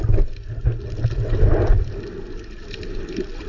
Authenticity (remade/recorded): recorded